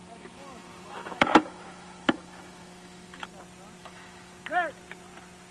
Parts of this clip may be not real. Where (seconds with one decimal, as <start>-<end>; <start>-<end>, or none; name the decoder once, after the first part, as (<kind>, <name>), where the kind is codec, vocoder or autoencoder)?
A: 0.0-3.3 (autoencoder, DAC-VAE); 3.8-4.3